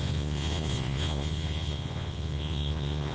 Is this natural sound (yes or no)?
no